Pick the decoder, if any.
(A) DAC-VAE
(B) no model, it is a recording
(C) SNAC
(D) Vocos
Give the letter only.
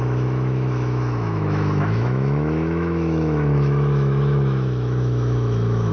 A